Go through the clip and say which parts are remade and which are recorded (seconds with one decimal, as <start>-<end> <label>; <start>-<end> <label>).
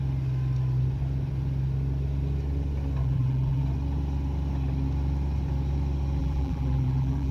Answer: 0.0-3.0 recorded; 3.0-3.6 remade; 3.6-6.2 recorded; 6.2-7.3 remade